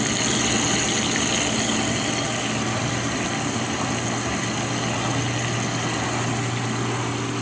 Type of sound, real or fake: real